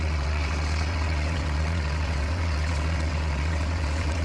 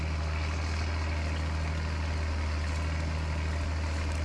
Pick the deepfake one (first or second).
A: first